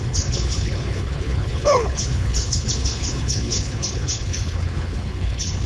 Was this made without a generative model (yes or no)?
no